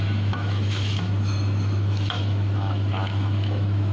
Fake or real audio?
fake